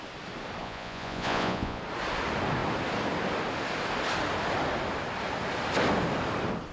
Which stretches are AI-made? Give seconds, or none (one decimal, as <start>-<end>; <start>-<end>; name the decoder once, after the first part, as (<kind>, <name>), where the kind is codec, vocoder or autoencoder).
0.6-1.8 (vocoder, Vocos)